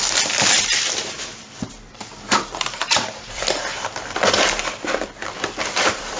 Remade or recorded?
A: remade